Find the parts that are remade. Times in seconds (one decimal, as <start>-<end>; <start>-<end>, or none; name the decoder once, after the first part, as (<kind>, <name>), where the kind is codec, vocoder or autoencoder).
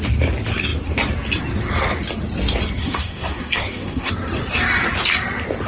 2.8-4.1 (codec, SNAC)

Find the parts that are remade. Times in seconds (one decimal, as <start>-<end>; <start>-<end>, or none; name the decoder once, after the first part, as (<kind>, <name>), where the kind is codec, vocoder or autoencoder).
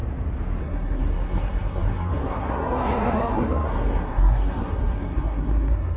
0.6-6.0 (codec, SNAC)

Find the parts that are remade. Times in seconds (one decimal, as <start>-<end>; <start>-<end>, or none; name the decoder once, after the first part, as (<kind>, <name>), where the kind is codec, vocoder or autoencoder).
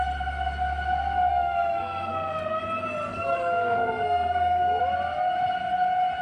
1.3-2.6 (codec, SNAC); 3.1-4.8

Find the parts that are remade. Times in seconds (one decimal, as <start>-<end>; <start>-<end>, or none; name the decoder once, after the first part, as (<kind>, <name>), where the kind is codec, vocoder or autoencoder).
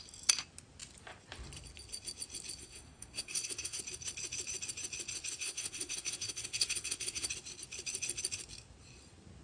2.6-3.8 (codec, SNAC); 5.4-7.3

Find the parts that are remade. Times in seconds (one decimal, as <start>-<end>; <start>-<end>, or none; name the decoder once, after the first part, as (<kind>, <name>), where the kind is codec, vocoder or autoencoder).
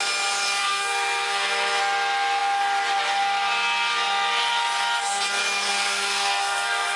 0.6-1.8 (codec, SNAC); 5.7-7.0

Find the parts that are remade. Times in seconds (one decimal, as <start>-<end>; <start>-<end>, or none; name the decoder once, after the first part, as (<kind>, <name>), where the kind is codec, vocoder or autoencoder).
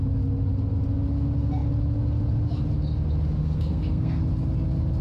3.4-4.2 (codec, SNAC)